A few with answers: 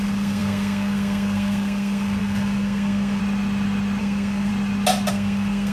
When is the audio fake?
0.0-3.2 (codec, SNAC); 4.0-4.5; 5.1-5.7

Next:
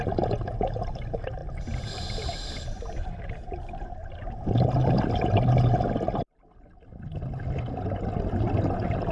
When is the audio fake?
none

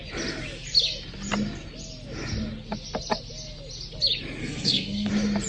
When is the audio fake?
4.4-5.1 (codec, SNAC)

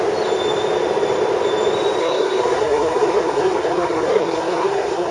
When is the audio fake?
2.0-5.1 (codec, SNAC)

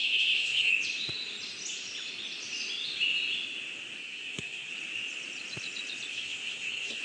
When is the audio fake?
0.0-0.7 (codec, SNAC); 4.0-4.7; 6.1-7.0

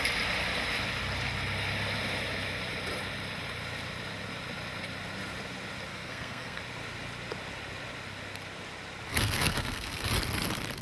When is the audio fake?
5.9-6.6 (codec, SNAC); 9.1-10.1

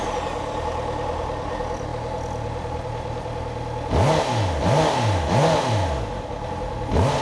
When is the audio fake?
none